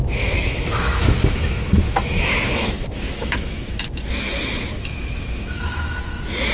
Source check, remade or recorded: remade